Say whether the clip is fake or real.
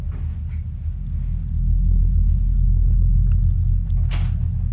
real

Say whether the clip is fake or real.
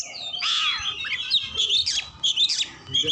real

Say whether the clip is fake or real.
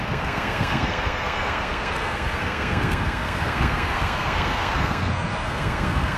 fake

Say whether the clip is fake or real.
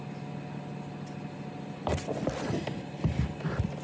real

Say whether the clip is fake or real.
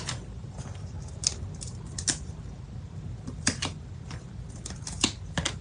real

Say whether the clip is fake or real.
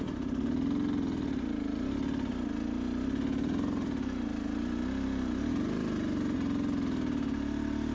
real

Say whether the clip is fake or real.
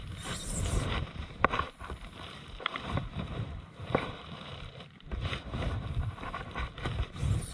fake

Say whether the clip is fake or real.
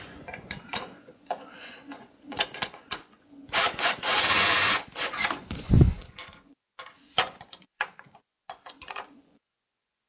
fake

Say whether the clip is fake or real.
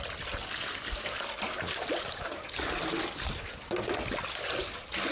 real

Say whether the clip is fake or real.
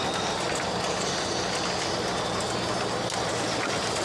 real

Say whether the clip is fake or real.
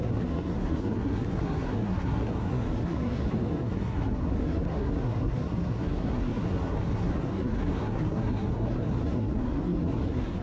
fake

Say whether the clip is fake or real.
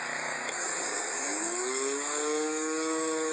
fake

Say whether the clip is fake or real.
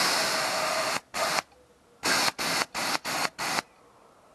real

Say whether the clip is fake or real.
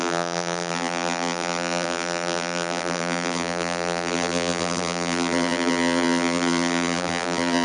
fake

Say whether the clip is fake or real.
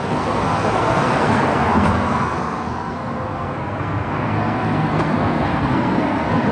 fake